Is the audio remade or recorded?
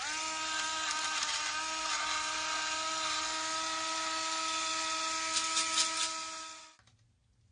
recorded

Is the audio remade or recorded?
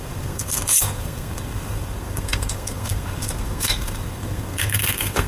remade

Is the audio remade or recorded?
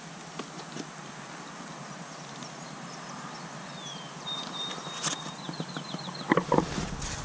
recorded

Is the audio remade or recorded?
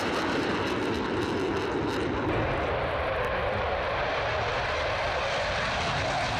recorded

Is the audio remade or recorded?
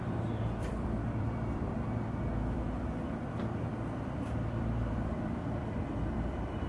remade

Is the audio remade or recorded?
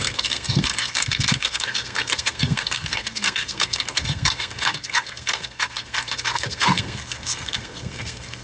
remade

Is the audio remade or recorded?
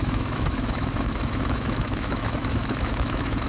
remade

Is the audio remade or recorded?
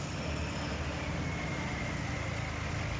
recorded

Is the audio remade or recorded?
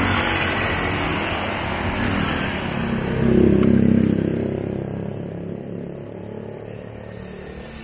recorded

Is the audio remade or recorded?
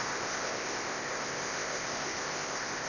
remade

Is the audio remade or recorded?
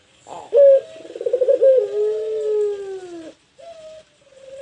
recorded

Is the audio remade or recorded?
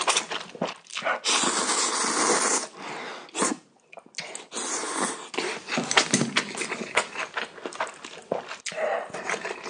recorded